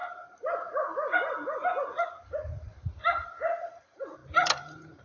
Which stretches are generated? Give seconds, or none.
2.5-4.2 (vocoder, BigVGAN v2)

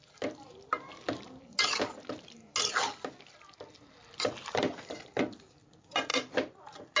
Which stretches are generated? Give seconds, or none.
none

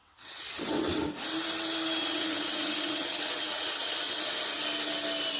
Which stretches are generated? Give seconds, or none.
0.0-1.0 (vocoder, WaveNeXt); 2.0-4.3

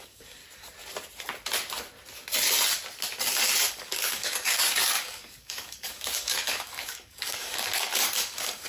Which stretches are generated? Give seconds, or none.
0.0-0.4 (codec, DAC); 3.7-8.7

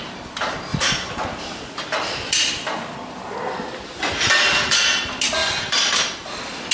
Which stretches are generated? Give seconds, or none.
5.4-6.7 (vocoder, BigVGAN v2)

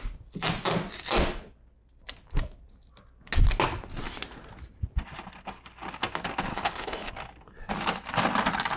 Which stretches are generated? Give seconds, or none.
6.5-7.1 (codec, HILCodec)